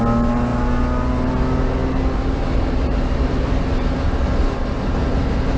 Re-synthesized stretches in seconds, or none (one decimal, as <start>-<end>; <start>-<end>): none